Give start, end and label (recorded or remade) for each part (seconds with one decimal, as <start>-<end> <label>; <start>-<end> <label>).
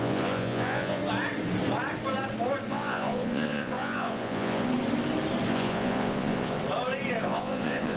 0.0-1.0 remade; 1.0-2.7 recorded; 2.7-4.7 remade; 4.7-5.5 recorded; 5.5-6.6 remade; 6.6-7.2 recorded; 7.2-8.0 remade